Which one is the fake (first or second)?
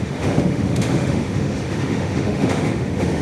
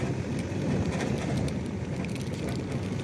first